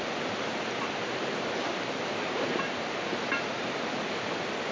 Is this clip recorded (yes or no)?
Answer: yes